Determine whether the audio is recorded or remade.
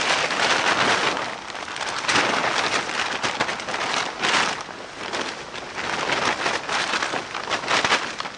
recorded